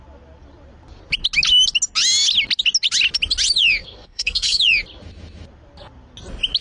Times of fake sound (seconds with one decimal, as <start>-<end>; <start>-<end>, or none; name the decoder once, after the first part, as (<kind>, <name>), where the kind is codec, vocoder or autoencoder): 3.8-4.6 (codec, SNAC)